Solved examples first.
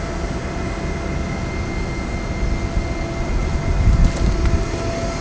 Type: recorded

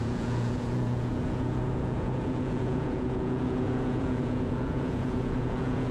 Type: remade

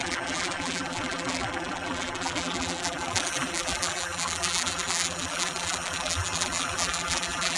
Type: remade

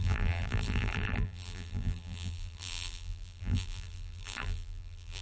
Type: remade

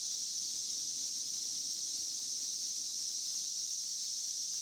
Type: recorded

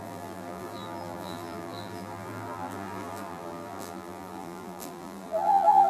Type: remade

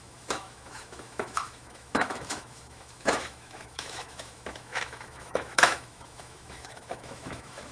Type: remade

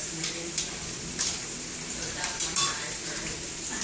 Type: remade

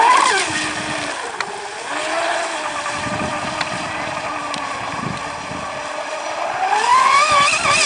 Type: recorded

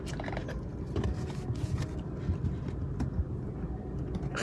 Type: recorded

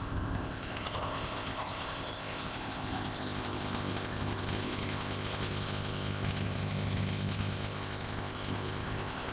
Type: remade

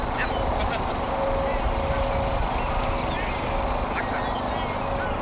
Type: recorded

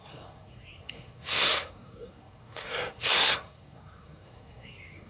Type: remade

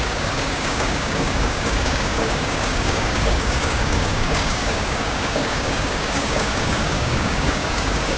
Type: remade